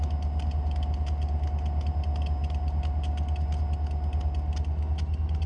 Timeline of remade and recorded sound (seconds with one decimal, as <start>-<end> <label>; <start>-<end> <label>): 0.0-5.5 recorded